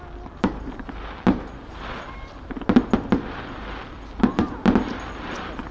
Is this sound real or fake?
real